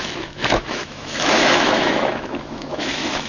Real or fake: fake